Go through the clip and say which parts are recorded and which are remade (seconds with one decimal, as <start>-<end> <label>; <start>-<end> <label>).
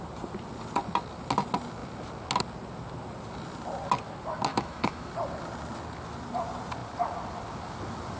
0.0-4.5 recorded; 4.5-5.1 remade; 5.1-8.2 recorded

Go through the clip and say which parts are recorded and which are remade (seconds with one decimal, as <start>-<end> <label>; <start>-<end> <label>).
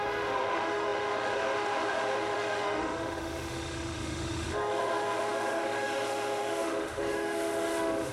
0.0-8.1 remade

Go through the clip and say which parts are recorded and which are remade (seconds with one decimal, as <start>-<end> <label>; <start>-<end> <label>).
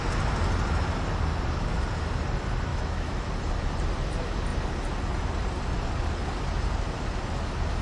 0.0-2.7 recorded; 2.7-3.3 remade; 3.3-7.8 recorded